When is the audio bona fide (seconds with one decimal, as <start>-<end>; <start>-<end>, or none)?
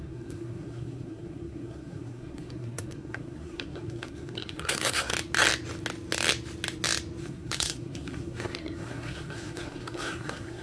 5.1-7.2